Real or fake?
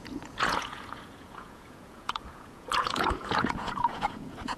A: fake